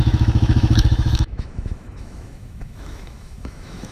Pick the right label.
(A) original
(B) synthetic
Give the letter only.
B